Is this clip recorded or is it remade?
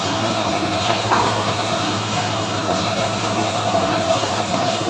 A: remade